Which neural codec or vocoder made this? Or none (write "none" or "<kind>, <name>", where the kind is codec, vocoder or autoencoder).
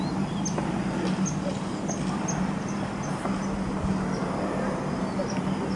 none